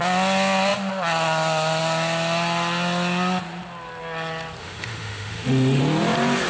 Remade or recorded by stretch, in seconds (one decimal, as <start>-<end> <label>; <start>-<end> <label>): 0.0-4.6 recorded; 4.6-5.8 remade; 5.8-6.5 recorded

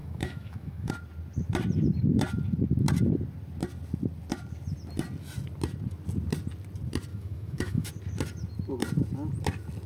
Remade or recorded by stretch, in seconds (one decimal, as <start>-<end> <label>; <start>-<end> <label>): 0.0-0.9 remade; 0.9-7.1 recorded; 7.1-7.9 remade; 7.9-9.9 recorded

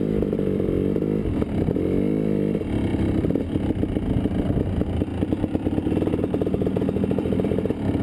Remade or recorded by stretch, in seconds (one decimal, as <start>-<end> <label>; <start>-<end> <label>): 0.0-8.0 recorded